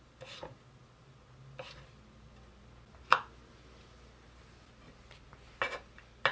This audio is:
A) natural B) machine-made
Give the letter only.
A